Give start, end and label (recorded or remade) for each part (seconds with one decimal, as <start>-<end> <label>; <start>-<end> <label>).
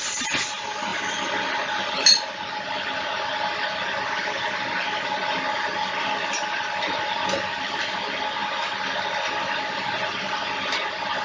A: 0.0-11.2 recorded